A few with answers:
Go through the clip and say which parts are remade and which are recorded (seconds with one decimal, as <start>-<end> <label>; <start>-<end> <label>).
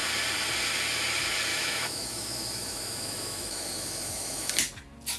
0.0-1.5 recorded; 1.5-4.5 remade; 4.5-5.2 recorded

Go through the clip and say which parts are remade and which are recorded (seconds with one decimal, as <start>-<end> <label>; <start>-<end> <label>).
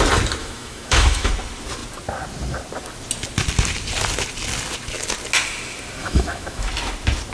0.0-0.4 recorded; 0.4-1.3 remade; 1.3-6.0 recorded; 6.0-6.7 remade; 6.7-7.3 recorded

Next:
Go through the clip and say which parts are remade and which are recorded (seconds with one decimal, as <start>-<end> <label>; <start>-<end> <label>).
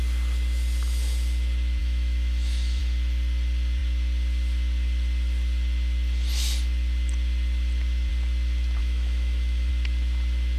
0.0-1.8 recorded; 1.8-2.8 remade; 2.8-8.8 recorded; 8.8-9.7 remade; 9.7-10.6 recorded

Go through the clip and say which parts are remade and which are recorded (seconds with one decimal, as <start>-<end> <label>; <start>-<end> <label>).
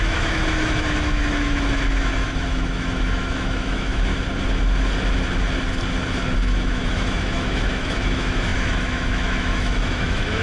0.0-4.1 remade; 4.1-6.4 recorded; 6.4-10.4 remade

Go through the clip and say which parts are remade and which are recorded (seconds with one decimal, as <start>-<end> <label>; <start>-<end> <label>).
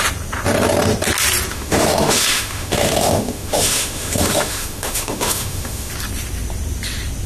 0.0-1.5 recorded; 1.5-5.9 remade; 5.9-7.3 recorded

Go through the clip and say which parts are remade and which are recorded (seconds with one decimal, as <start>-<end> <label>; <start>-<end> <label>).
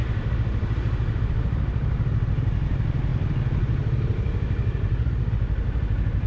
0.0-6.3 recorded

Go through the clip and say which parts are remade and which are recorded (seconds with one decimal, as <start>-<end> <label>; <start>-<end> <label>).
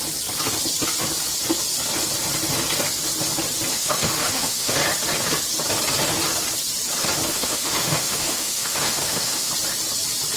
0.0-3.7 recorded; 3.7-4.8 remade; 4.8-7.3 recorded; 7.3-9.5 remade; 9.5-10.4 recorded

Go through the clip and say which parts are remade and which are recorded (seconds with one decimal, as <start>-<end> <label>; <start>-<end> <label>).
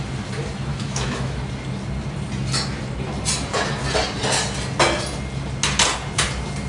0.0-0.7 recorded; 0.7-1.4 remade; 1.4-6.7 recorded